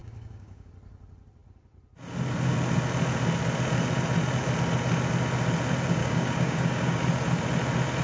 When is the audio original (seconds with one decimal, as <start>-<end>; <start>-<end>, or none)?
0.7-6.0; 7.0-8.0